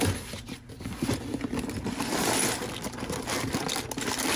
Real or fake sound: real